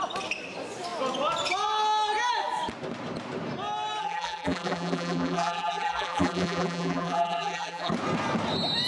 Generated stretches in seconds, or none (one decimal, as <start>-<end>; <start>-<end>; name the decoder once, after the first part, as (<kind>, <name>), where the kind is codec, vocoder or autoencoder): 4.0-7.9 (vocoder, BigVGAN v2)